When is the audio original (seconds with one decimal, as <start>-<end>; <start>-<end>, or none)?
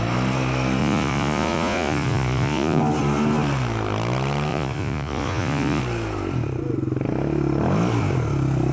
0.0-0.8; 2.8-4.5; 5.8-8.7